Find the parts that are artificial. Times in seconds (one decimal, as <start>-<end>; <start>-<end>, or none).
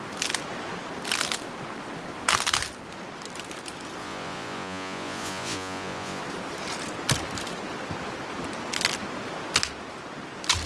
4.0-6.2